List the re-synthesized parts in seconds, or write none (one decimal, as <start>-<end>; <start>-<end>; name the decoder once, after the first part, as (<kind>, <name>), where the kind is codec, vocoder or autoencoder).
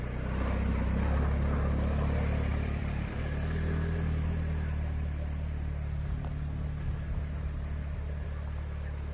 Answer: 2.5-3.2 (vocoder, BigVGAN v2)